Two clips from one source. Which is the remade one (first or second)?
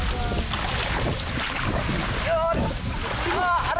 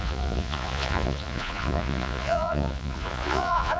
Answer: second